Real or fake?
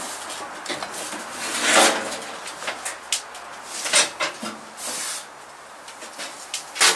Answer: real